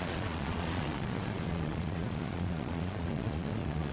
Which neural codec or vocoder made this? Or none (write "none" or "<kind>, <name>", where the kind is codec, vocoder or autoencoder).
vocoder, Vocos